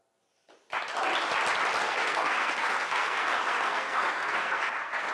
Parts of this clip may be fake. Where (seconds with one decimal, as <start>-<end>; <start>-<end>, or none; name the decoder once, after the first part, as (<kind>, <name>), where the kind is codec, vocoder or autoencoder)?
1.8-5.1 (codec, SNAC)

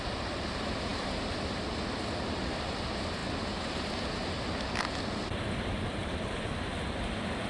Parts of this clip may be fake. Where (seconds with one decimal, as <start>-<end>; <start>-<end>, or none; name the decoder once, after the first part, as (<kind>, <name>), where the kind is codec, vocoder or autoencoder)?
none